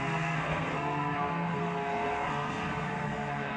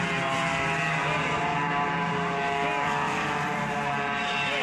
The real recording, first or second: second